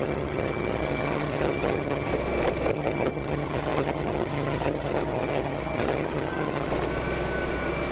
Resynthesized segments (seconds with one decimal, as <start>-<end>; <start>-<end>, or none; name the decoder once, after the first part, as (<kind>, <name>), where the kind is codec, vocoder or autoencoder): 0.0-2.1 (vocoder, HiFi-GAN); 2.7-6.7